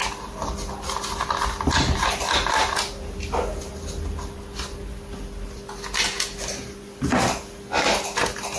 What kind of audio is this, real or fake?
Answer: real